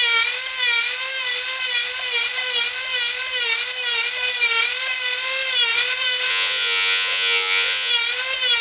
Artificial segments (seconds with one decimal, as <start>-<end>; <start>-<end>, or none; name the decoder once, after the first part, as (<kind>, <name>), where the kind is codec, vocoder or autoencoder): 6.3-7.9 (vocoder, Vocos)